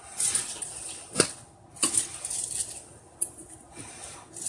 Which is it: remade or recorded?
recorded